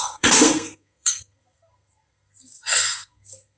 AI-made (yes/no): yes